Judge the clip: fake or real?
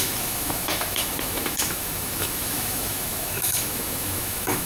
fake